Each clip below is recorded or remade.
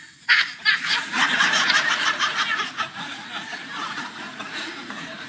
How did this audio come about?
remade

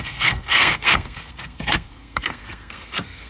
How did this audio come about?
remade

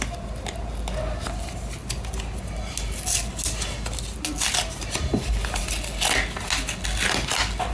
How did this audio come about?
recorded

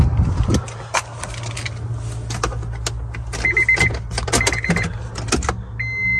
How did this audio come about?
recorded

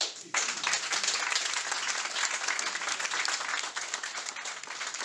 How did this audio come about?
recorded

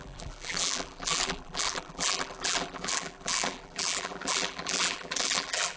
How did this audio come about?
remade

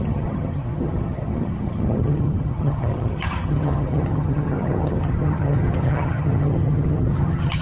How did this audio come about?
remade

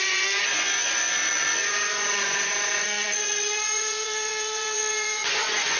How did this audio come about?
remade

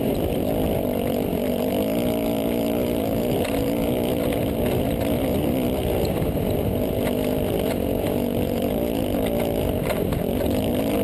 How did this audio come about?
recorded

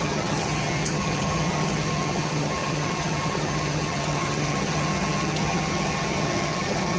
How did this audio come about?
remade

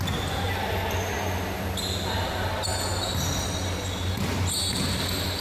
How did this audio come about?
recorded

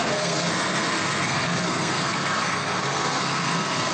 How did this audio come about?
remade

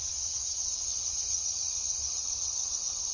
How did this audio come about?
remade